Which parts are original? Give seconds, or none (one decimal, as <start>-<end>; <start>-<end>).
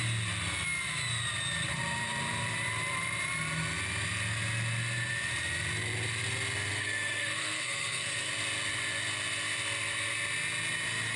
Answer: 0.0-6.7; 8.3-11.2